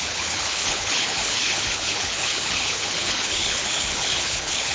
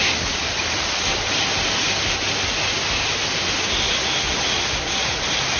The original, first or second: second